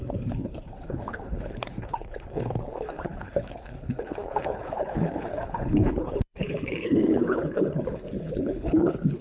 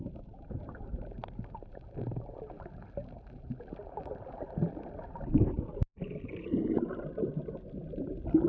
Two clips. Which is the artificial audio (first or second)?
first